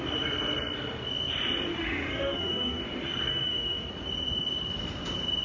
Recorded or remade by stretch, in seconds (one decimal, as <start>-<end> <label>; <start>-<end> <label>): 0.0-1.7 recorded; 1.7-2.8 remade; 2.8-3.3 recorded; 3.3-3.9 remade; 3.9-5.4 recorded